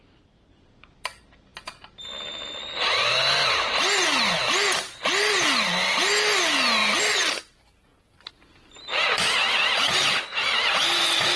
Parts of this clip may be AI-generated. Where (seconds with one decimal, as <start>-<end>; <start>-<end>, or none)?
none